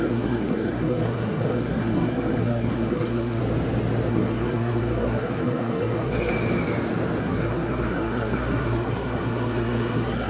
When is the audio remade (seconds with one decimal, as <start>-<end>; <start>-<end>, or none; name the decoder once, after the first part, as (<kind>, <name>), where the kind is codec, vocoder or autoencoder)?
0.0-3.4 (codec, SNAC); 4.1-6.3; 7.2-10.3